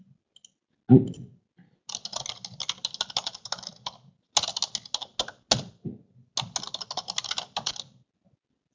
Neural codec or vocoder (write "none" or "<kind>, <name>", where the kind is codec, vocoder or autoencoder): none